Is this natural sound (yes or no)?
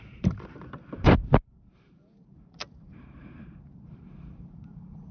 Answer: no